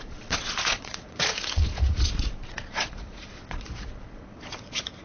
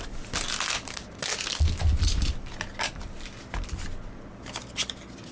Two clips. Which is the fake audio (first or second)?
first